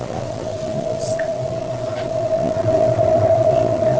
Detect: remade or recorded remade